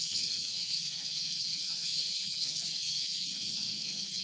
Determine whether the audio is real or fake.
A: fake